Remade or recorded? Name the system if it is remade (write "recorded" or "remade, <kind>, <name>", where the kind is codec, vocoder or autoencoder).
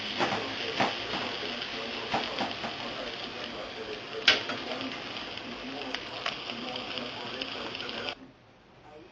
recorded